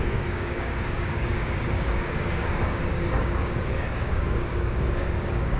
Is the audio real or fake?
fake